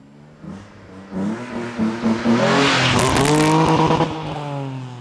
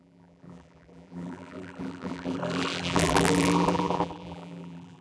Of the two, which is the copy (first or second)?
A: second